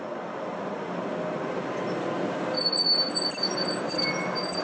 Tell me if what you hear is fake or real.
real